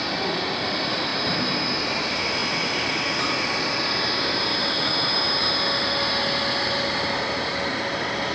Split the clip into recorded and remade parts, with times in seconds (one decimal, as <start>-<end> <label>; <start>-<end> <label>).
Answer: 0.0-8.3 recorded